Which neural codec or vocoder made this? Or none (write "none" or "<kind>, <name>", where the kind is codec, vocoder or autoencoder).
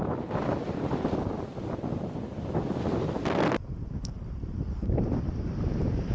none